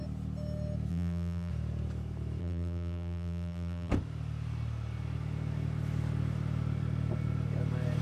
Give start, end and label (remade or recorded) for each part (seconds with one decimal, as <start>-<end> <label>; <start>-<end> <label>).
0.0-0.9 recorded; 0.9-1.5 remade; 1.5-2.4 recorded; 2.4-3.9 remade; 3.9-8.0 recorded